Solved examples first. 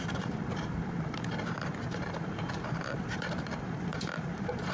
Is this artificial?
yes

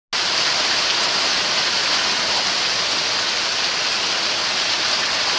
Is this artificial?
no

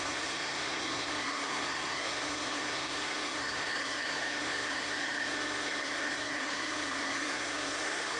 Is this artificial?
yes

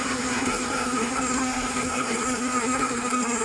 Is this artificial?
yes